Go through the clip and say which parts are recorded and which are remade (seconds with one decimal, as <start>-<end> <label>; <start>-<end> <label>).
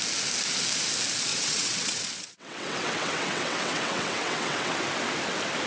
0.0-1.3 recorded; 1.3-4.7 remade; 4.7-5.7 recorded